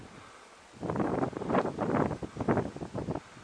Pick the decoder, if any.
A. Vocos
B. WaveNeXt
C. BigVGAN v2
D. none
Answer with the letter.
D